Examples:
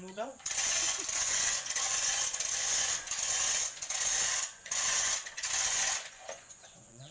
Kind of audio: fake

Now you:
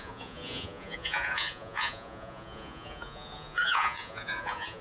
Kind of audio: fake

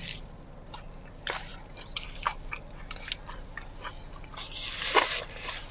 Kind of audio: real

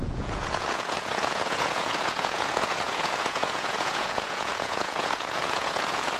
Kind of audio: fake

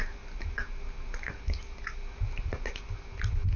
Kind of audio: real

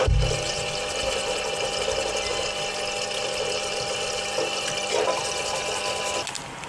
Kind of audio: real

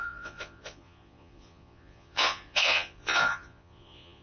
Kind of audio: fake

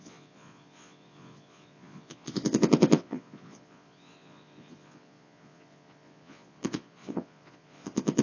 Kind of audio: fake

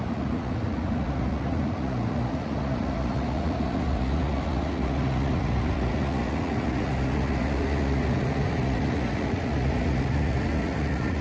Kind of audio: fake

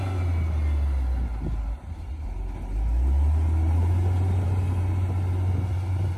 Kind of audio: real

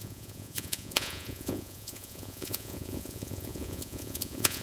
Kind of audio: fake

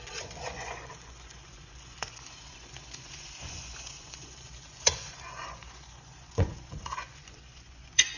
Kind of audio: fake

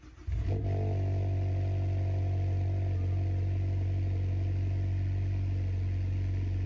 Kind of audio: real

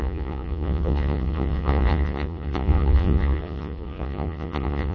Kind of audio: fake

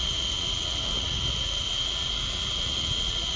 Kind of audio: fake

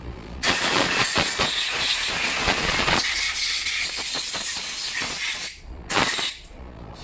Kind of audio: fake